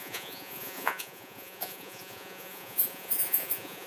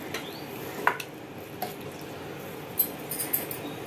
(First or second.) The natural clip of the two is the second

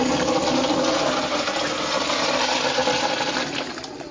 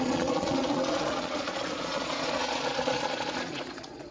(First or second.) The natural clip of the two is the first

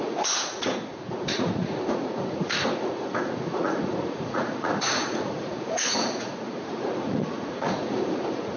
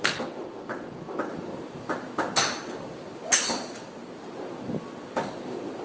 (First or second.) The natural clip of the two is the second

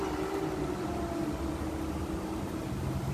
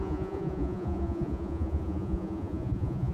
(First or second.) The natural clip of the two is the first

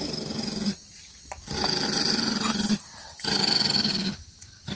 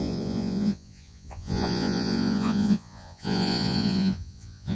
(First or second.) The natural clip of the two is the first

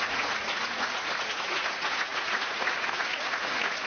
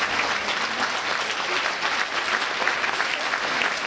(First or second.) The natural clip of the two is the second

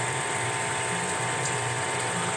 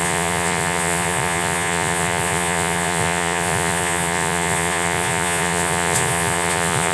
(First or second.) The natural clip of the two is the first